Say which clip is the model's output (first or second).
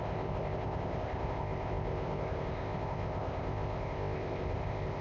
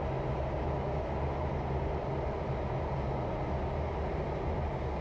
first